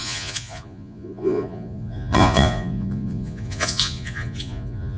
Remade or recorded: remade